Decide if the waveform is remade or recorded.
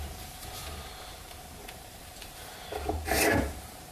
remade